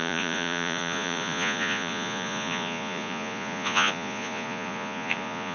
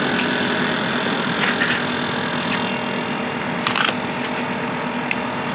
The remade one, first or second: first